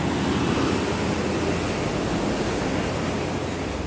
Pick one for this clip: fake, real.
real